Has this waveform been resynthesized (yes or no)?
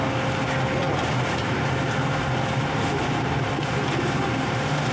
no